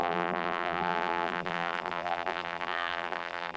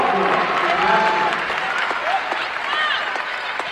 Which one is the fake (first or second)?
first